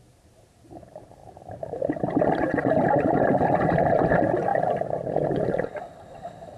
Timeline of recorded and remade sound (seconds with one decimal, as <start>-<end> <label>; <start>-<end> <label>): 0.0-4.5 remade; 4.5-5.8 recorded; 5.8-6.6 remade